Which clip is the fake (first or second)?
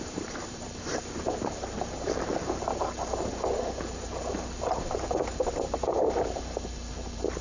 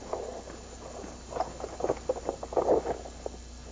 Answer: first